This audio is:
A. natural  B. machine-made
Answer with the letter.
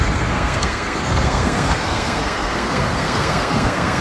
B